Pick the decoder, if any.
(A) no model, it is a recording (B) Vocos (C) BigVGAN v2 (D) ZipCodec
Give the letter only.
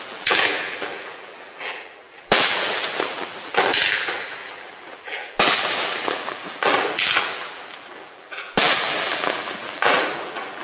C